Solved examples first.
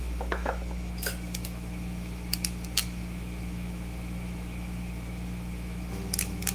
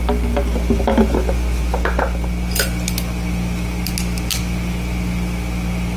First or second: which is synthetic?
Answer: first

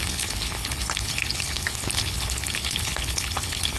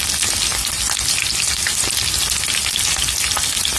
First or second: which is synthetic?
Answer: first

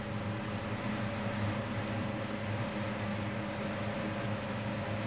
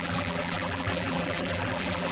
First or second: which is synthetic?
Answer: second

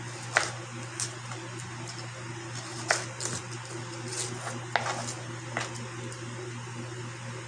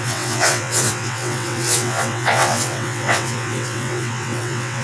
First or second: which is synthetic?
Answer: second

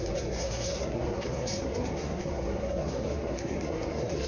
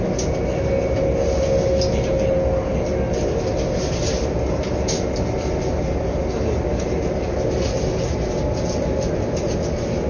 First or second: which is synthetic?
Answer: first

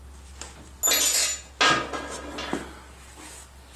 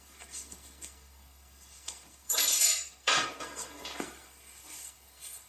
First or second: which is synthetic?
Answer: second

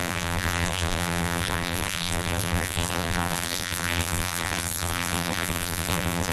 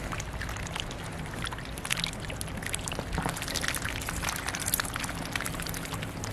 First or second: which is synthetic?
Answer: first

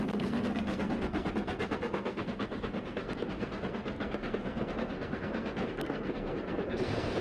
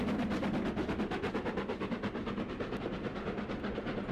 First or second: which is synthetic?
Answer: first